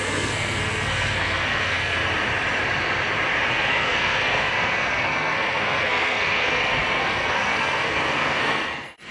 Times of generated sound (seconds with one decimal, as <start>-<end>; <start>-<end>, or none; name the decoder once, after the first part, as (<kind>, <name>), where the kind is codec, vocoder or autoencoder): 0.0-2.0 (codec, SNAC); 3.5-9.1